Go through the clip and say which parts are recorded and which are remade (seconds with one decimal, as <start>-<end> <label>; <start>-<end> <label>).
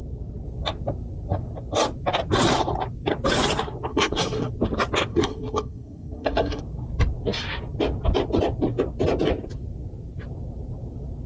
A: 0.0-3.9 recorded; 3.9-4.5 remade; 4.5-5.1 recorded; 5.1-6.6 remade; 6.6-11.3 recorded